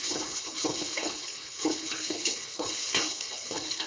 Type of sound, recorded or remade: remade